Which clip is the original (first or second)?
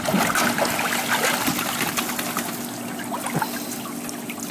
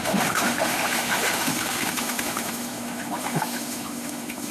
first